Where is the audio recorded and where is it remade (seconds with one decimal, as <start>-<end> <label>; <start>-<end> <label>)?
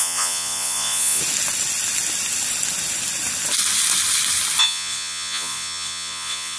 0.0-1.2 remade; 1.2-4.6 recorded; 4.6-6.6 remade